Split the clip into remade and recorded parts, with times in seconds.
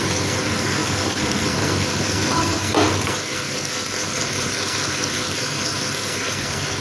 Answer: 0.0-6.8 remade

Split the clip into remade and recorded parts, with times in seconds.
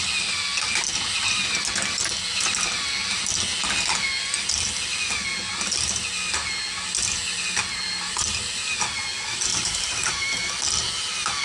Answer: 0.0-9.5 recorded; 9.5-10.5 remade; 10.5-11.4 recorded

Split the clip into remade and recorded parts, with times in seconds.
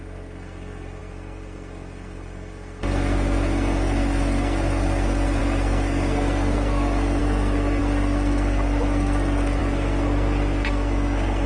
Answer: 0.0-11.5 remade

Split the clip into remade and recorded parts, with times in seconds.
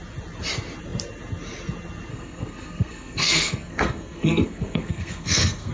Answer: 0.0-2.1 recorded; 2.1-5.7 remade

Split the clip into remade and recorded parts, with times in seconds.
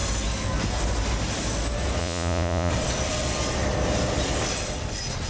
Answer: 0.0-2.0 recorded; 2.0-2.7 remade; 2.7-5.3 recorded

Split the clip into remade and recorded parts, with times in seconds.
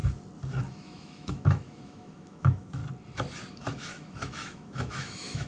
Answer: 0.0-0.7 recorded; 0.7-2.8 remade; 2.8-3.5 recorded; 3.5-5.5 remade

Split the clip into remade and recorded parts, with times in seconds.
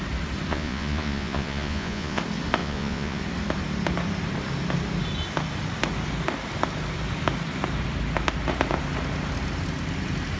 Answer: 0.0-0.5 recorded; 0.5-2.2 remade; 2.2-2.6 recorded; 2.6-3.2 remade; 3.2-10.4 recorded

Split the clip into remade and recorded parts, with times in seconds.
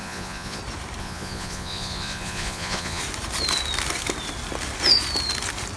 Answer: 0.0-0.6 remade; 0.6-1.0 recorded; 1.0-3.0 remade; 3.0-5.8 recorded